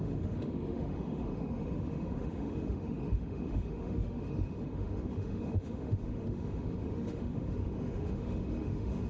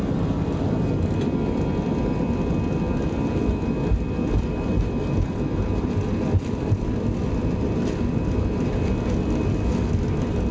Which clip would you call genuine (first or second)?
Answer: second